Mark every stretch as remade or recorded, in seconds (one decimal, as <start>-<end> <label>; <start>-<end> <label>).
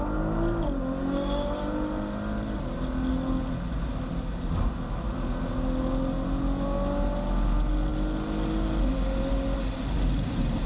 0.0-10.7 recorded